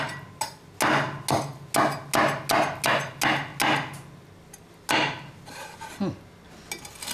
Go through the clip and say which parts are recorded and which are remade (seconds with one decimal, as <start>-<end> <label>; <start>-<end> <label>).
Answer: 0.0-7.1 recorded